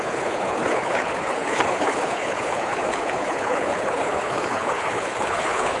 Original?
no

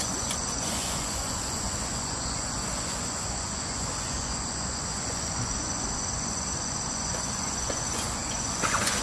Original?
no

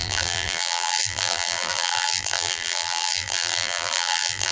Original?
no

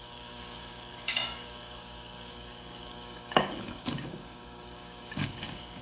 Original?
no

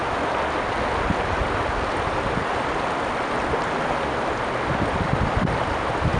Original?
yes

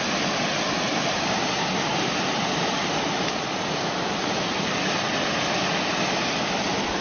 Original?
yes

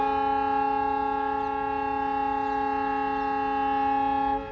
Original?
yes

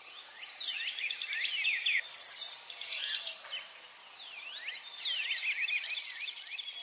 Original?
yes